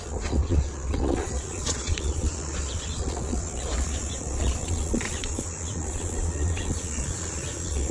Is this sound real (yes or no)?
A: no